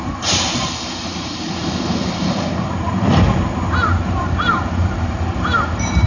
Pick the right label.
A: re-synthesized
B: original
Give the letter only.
A